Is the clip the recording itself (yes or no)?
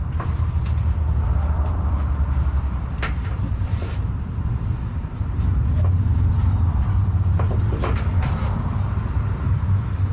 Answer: no